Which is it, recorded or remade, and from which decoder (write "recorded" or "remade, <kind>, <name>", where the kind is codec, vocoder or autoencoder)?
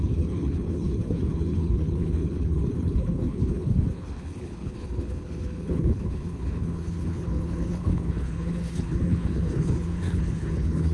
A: remade, codec, HILCodec